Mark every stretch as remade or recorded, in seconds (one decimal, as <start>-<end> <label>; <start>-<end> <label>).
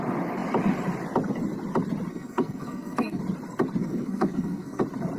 0.0-2.1 recorded; 2.1-3.2 remade; 3.2-3.8 recorded; 3.8-4.8 remade; 4.8-5.2 recorded